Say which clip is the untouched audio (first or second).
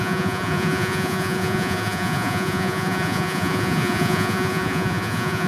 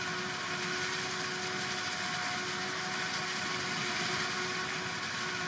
second